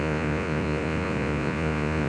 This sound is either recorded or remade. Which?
remade